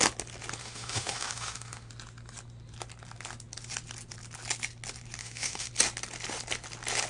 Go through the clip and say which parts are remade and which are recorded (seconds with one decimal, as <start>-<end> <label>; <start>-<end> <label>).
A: 0.0-0.6 recorded; 0.6-1.9 remade; 1.9-5.2 recorded; 5.2-5.7 remade; 5.7-7.1 recorded